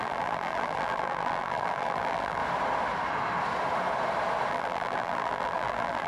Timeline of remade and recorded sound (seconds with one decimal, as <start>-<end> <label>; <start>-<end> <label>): 0.0-2.4 remade; 2.4-4.5 recorded; 4.5-6.1 remade